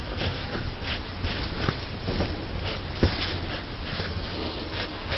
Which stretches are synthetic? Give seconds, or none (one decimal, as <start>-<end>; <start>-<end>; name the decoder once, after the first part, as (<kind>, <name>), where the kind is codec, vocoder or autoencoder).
0.0-0.9 (codec, SNAC); 4.0-5.2